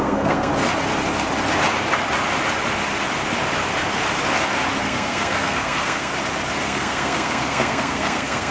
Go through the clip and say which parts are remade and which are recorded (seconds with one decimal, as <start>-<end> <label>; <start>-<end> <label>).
0.0-0.5 remade; 0.5-4.8 recorded; 4.8-6.1 remade; 6.1-6.6 recorded; 6.6-8.5 remade